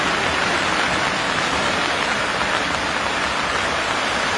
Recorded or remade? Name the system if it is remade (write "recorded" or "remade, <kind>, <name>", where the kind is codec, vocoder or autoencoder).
recorded